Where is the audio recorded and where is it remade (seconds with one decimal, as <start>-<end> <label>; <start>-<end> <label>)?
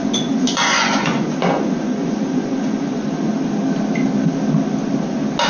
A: 0.0-3.3 remade; 3.3-5.5 recorded